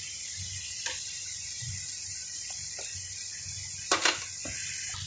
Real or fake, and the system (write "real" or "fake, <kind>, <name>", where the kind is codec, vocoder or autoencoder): real